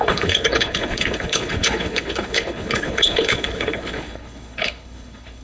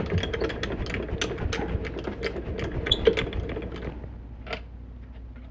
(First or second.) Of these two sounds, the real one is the second